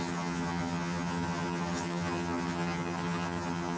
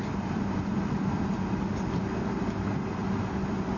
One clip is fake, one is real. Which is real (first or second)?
second